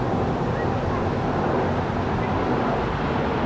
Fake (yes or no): no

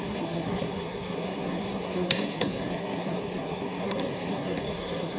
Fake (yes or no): yes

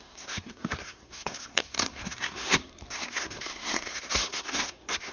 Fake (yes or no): yes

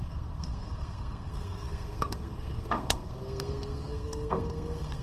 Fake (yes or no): yes